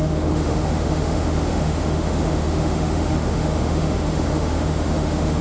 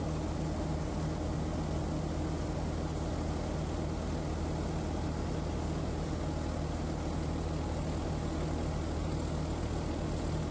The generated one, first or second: first